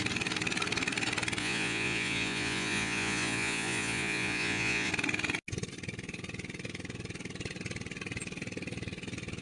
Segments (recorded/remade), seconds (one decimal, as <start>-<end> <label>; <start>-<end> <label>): 0.0-1.4 recorded; 1.4-4.9 remade; 4.9-9.4 recorded